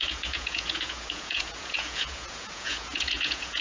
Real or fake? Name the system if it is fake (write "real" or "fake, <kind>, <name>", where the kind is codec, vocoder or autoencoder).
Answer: fake, vocoder, Vocos